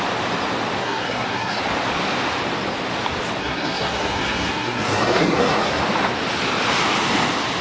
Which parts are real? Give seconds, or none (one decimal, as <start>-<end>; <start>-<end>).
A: 0.0-0.8; 1.6-3.4; 5.8-7.6